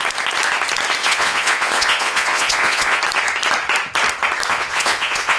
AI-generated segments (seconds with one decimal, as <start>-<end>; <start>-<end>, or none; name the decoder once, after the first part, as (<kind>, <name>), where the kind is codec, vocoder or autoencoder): 1.0-3.0 (vocoder, Vocos); 4.5-5.4